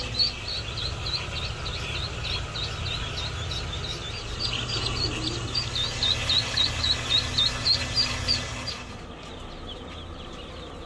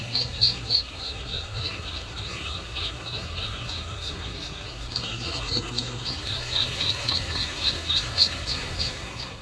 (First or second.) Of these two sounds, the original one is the first